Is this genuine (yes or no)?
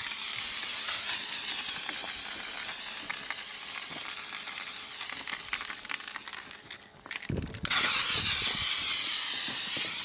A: yes